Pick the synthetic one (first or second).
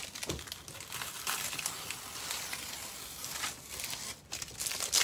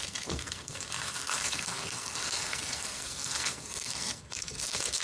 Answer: second